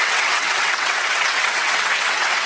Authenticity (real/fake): fake